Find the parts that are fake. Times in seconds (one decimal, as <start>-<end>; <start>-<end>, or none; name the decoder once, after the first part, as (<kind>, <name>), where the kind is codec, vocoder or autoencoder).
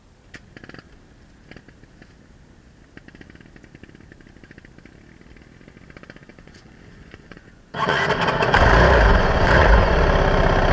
6.3-8.7 (vocoder, Vocos); 9.1-10.0